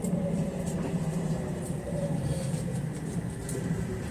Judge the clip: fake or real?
fake